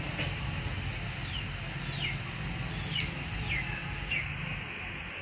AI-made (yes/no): no